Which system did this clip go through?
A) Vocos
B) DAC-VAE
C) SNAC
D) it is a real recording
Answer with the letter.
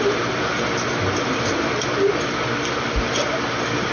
D